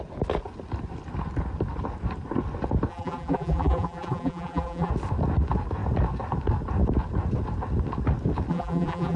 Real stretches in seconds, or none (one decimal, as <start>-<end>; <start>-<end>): 0.0-2.9; 4.9-8.5